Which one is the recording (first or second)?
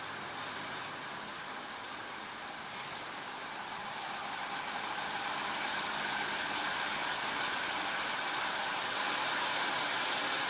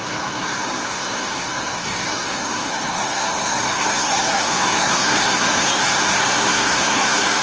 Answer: first